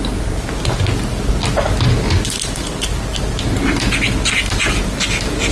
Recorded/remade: recorded